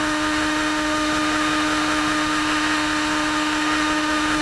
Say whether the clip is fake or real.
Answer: fake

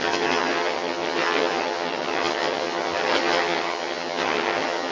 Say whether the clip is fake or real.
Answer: fake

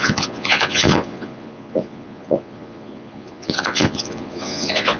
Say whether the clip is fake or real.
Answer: fake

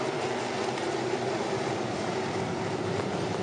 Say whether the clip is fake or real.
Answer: fake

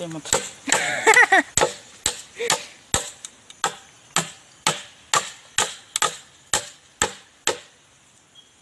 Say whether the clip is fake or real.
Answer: real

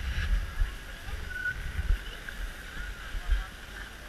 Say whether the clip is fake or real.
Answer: real